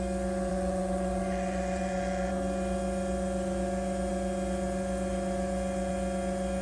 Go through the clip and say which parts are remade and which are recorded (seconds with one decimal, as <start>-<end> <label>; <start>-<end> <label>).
0.0-0.5 recorded; 0.5-2.3 remade; 2.3-6.6 recorded